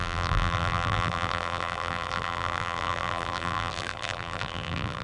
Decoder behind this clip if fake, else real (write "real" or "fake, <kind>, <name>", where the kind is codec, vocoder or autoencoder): fake, vocoder, BigVGAN v2